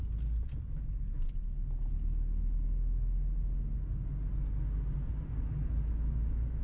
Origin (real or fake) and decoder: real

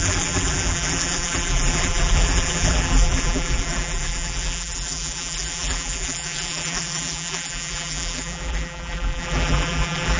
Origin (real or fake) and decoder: fake, vocoder, BigVGAN v2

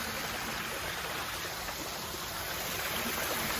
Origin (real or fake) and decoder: real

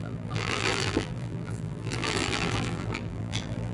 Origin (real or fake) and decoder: fake, vocoder, BigVGAN v2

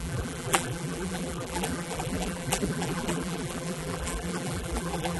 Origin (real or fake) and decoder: fake, vocoder, BigVGAN v2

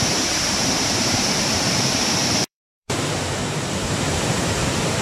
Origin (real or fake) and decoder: fake, vocoder, BigVGAN v2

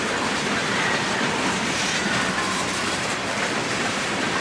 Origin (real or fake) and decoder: fake, vocoder, BigVGAN v2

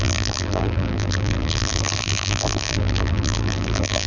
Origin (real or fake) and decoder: fake, vocoder, BigVGAN v2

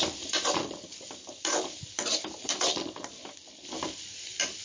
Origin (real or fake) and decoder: real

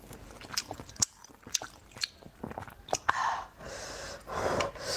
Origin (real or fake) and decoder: real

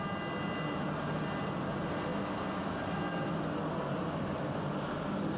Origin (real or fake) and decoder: real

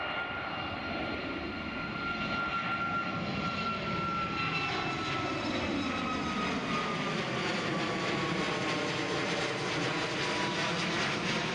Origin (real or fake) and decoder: real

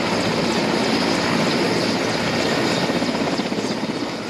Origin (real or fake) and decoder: real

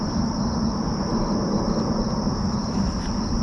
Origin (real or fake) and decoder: fake, vocoder, BigVGAN v2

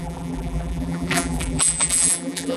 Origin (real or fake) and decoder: fake, vocoder, BigVGAN v2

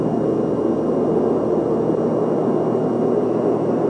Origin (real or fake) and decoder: real